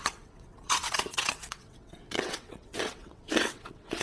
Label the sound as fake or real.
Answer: fake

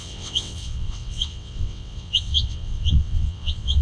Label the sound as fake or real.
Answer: fake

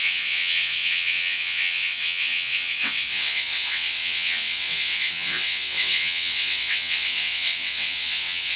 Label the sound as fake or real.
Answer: fake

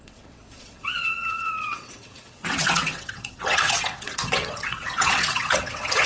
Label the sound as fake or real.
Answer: fake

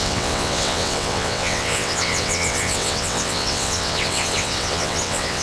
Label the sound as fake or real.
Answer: fake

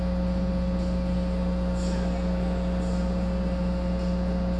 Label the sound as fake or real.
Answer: real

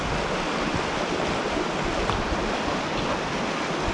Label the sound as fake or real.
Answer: real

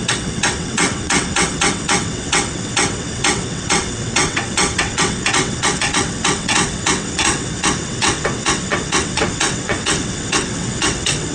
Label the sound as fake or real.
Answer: fake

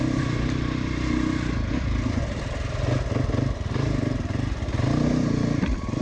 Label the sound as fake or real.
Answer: real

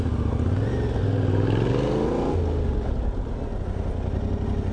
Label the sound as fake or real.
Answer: real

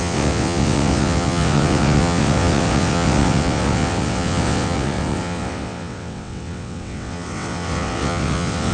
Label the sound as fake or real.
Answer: fake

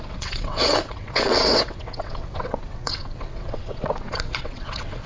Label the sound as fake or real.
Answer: fake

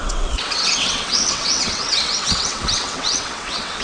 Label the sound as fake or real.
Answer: fake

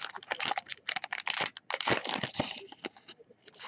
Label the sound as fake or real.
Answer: real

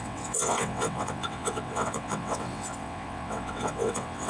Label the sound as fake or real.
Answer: fake